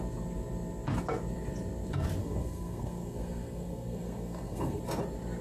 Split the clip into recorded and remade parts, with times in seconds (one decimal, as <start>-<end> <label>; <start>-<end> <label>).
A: 0.0-2.2 recorded; 2.2-4.8 remade; 4.8-5.4 recorded